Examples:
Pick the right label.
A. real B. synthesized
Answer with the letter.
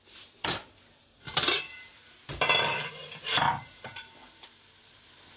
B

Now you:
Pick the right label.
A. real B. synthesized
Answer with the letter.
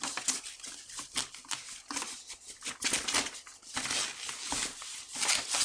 A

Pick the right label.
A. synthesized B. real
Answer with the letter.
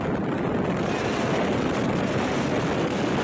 B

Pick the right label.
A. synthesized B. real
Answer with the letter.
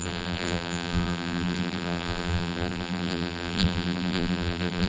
A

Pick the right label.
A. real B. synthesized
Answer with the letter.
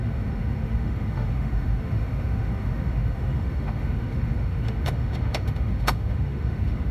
B